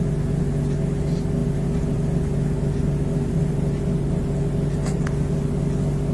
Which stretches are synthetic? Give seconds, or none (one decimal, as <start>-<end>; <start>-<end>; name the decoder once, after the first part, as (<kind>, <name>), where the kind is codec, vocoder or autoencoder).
none